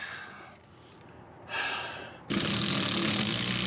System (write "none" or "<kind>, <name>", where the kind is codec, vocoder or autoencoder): none